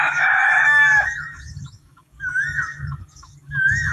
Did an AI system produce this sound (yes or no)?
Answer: yes